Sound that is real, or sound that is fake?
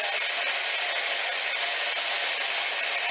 real